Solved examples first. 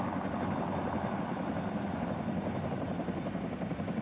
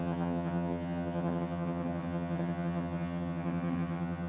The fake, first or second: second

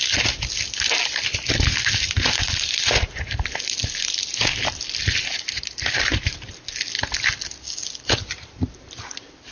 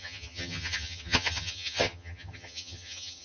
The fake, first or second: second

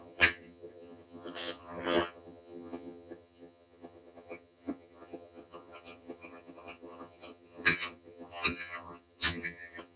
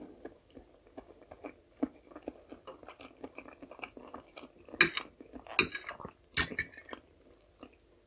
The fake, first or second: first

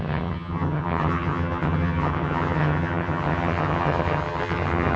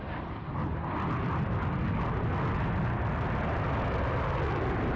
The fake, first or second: first